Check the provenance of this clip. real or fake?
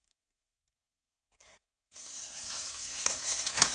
fake